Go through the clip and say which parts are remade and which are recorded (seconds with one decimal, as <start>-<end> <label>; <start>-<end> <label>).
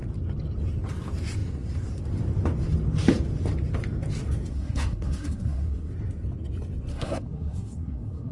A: 0.0-4.5 recorded; 4.5-5.9 remade; 5.9-6.9 recorded; 6.9-8.3 remade